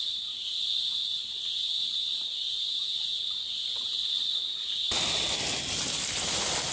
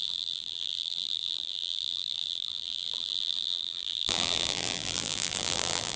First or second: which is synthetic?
second